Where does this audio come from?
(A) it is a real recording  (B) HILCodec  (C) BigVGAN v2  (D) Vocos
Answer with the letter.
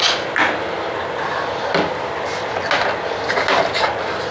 A